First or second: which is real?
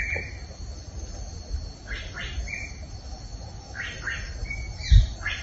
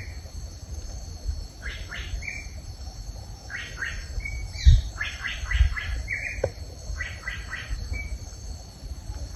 first